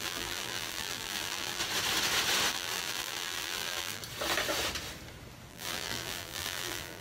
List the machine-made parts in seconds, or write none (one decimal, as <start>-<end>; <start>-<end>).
0.0-1.6; 2.5-4.0; 5.5-7.0